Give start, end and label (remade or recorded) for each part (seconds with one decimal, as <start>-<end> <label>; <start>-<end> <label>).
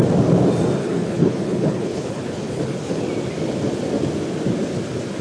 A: 0.0-0.8 recorded; 0.8-3.0 remade; 3.0-5.2 recorded